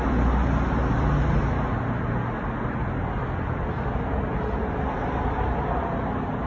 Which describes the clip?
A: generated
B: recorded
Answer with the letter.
B